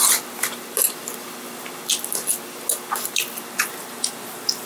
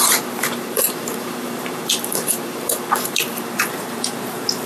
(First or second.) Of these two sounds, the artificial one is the second